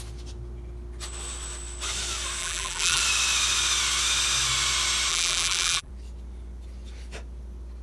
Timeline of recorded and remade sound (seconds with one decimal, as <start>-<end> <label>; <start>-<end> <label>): 0.0-2.4 recorded; 2.4-3.0 remade; 3.0-5.1 recorded; 5.1-5.9 remade; 5.9-7.8 recorded